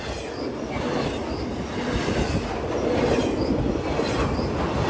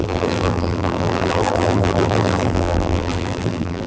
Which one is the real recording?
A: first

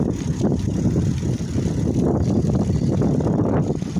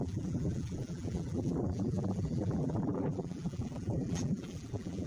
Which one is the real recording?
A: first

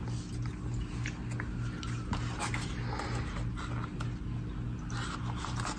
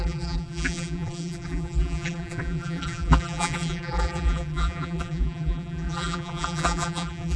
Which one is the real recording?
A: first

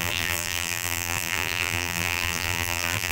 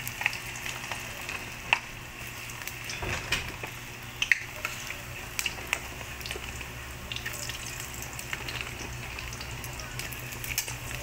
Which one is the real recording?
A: second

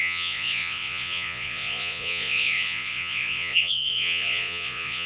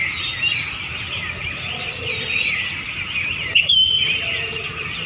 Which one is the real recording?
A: second